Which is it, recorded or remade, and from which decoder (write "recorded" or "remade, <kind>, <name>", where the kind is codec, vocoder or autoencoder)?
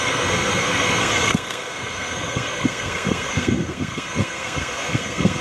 remade, codec, SNAC